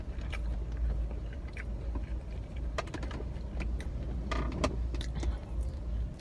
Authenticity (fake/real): real